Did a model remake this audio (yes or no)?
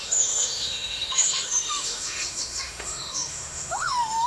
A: yes